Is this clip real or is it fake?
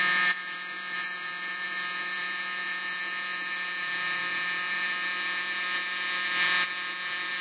fake